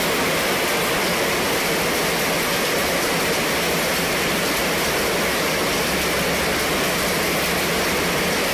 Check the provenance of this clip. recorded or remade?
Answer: recorded